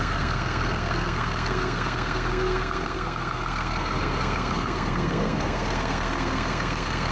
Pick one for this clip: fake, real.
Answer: fake